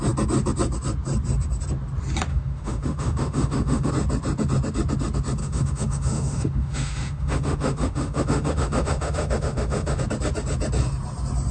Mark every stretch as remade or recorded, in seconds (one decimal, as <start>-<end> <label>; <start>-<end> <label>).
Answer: 0.0-2.3 recorded; 2.3-3.9 remade; 3.9-5.4 recorded; 5.4-10.0 remade; 10.0-11.5 recorded